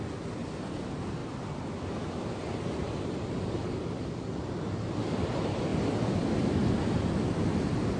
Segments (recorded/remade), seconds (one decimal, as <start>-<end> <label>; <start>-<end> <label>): 0.0-8.0 recorded